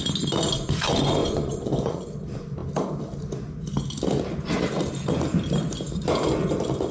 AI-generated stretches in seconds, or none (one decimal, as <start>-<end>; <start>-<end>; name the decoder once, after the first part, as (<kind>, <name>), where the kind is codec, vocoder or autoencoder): 1.2-2.0 (vocoder, Vocos)